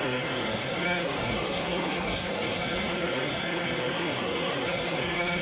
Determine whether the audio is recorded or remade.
remade